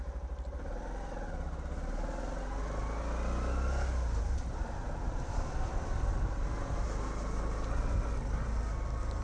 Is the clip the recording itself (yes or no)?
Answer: yes